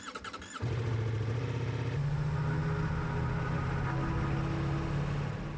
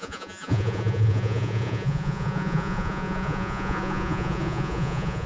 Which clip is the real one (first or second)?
first